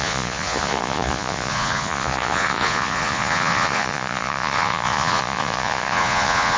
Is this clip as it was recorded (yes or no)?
no